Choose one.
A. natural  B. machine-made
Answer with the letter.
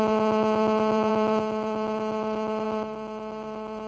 B